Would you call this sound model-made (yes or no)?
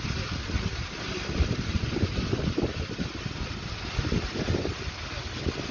no